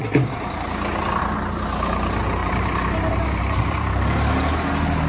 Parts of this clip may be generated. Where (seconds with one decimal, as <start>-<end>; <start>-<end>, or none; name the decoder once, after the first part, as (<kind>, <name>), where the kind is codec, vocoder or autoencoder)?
2.4-3.9 (vocoder, BigVGAN v2)